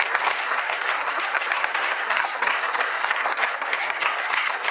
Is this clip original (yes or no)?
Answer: no